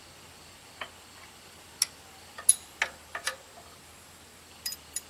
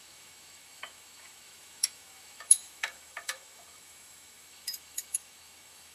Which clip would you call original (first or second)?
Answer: first